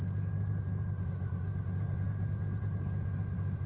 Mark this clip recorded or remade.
recorded